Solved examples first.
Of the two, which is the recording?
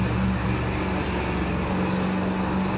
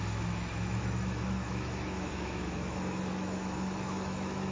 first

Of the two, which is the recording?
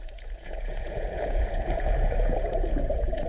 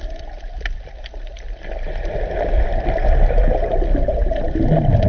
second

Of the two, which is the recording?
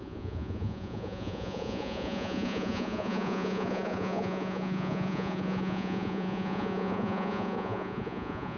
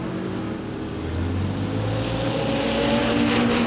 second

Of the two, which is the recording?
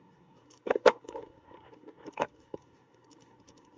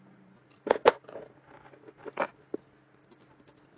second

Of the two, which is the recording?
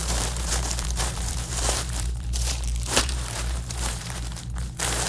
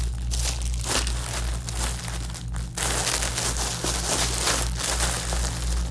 second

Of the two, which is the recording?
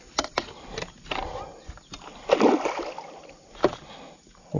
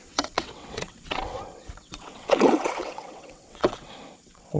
first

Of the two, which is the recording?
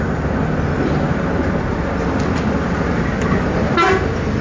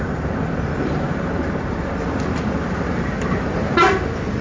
first